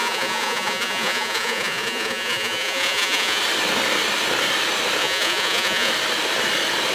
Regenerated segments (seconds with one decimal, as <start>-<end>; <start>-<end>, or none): 0.0-3.4; 5.0-5.9